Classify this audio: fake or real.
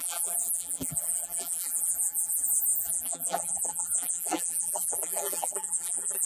fake